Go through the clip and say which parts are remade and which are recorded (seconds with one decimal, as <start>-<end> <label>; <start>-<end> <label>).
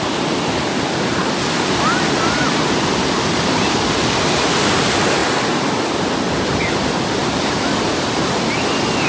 0.0-9.1 recorded